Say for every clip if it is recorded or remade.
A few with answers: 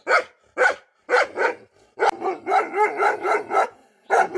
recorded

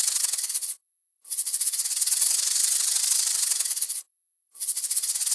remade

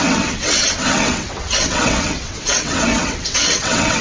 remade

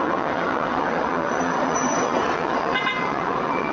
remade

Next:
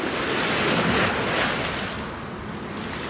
recorded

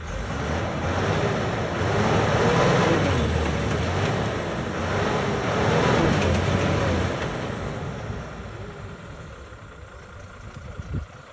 recorded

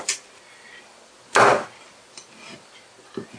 recorded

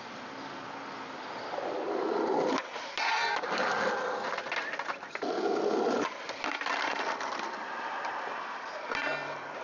recorded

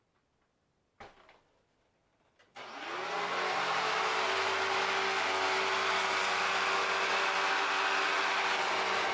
recorded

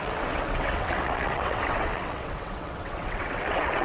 remade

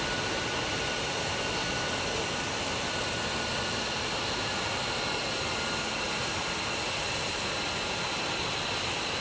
recorded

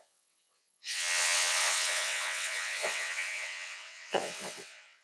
remade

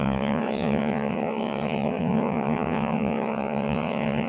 remade